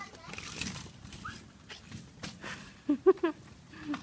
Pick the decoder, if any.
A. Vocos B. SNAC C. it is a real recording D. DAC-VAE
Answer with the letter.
C